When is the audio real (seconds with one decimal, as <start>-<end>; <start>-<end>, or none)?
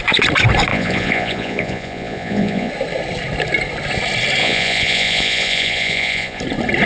0.0-0.7; 2.7-4.4; 6.4-6.9